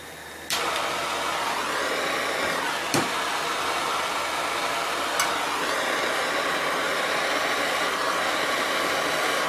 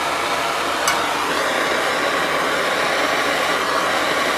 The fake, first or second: first